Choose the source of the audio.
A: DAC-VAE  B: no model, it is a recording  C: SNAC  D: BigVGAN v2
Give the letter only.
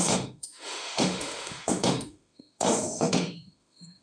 A